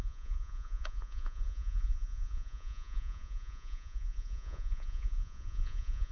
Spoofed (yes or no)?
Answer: yes